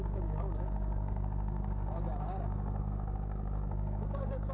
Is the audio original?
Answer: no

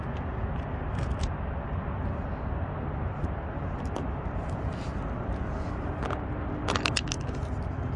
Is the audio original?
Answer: yes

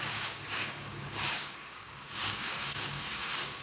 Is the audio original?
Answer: no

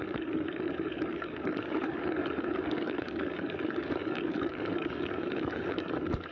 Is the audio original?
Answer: no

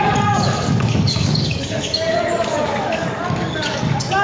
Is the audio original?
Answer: no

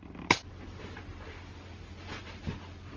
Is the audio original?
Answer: yes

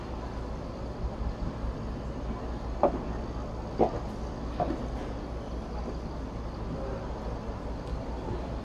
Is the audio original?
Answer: yes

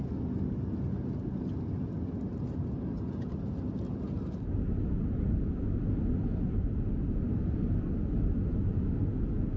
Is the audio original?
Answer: yes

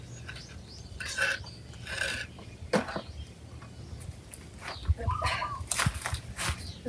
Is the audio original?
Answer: yes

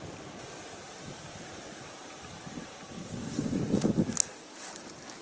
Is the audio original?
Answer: yes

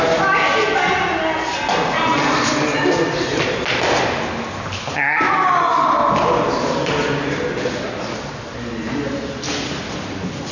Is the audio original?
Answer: yes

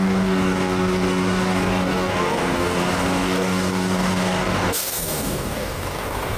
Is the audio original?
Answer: no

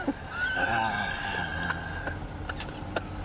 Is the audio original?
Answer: yes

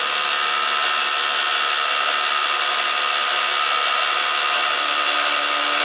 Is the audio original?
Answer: yes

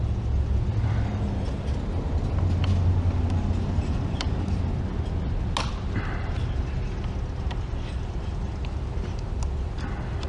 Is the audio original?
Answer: yes